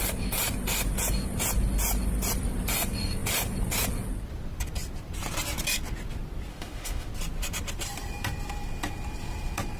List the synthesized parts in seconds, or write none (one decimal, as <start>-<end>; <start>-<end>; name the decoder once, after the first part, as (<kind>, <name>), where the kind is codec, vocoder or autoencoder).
6.5-7.1 (autoencoder, DAC-VAE)

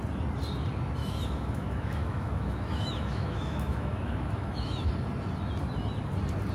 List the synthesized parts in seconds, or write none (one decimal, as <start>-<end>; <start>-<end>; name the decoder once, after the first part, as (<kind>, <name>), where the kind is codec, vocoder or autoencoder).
1.0-4.9 (autoencoder, DAC-VAE)

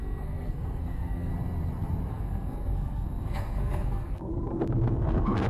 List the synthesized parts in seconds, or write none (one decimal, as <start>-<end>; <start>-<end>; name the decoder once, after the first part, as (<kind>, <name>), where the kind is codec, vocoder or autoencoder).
0.0-1.3 (codec, SNAC); 2.1-4.3; 4.9-5.5

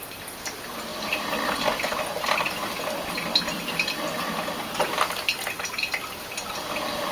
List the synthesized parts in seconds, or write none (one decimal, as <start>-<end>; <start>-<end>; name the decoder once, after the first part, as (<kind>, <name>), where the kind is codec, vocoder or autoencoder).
none

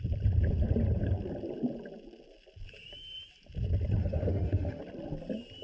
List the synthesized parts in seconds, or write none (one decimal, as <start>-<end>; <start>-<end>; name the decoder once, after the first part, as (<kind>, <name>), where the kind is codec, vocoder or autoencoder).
4.0-4.8 (autoencoder, DAC-VAE)

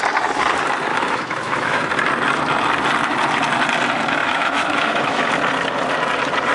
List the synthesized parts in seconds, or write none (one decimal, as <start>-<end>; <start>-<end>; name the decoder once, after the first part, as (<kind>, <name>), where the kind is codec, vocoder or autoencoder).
0.9-1.9 (autoencoder, DAC-VAE); 4.2-5.3